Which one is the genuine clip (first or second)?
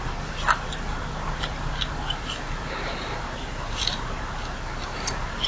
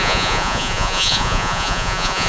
first